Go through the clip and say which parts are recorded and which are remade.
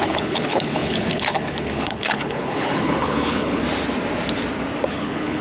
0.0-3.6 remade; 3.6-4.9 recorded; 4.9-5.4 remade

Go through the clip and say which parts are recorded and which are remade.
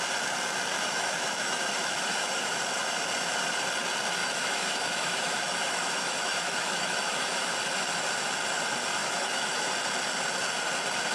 0.0-0.7 recorded; 0.7-2.6 remade; 2.6-4.2 recorded; 4.2-7.5 remade; 7.5-9.0 recorded; 9.0-9.7 remade; 9.7-11.1 recorded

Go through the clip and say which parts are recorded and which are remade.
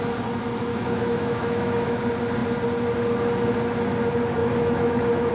0.0-0.7 recorded; 0.7-2.0 remade; 2.0-4.4 recorded; 4.4-5.3 remade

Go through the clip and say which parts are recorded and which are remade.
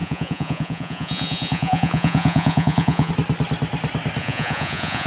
0.0-3.1 remade; 3.1-4.2 recorded; 4.2-5.1 remade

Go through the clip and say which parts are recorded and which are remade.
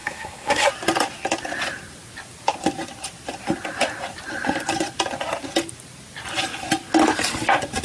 0.0-0.7 remade; 0.7-7.8 recorded